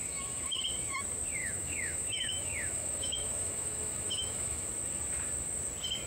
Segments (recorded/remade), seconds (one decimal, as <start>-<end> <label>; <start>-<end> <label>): 0.0-0.6 remade; 0.6-1.4 recorded; 1.4-4.7 remade; 4.7-6.1 recorded